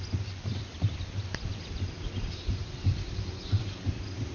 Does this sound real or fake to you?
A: real